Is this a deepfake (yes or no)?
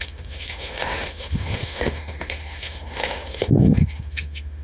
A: yes